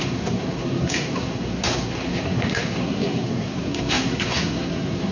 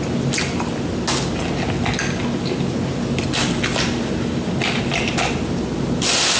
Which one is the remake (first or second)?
first